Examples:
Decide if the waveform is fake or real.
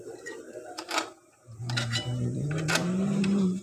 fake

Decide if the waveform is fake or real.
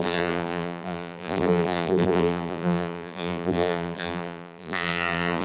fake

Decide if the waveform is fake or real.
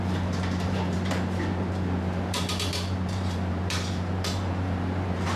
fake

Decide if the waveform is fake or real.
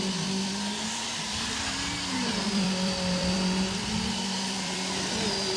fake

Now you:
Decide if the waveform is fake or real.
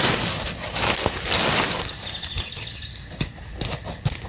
real